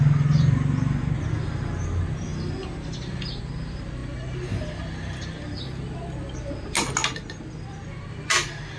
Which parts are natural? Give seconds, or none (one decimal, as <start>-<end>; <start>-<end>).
0.0-8.8